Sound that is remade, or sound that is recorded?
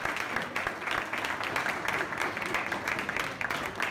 recorded